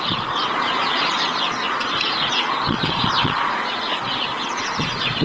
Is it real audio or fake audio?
fake